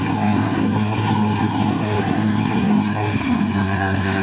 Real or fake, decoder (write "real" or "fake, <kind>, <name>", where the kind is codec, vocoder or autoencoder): fake, codec, SNAC